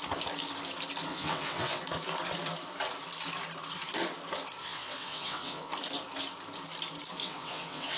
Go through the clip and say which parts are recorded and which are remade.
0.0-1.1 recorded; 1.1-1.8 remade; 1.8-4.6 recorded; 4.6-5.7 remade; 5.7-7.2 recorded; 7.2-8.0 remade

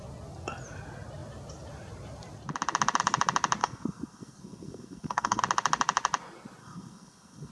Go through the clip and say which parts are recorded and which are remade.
0.0-3.6 recorded; 3.6-5.4 remade; 5.4-6.6 recorded; 6.6-7.5 remade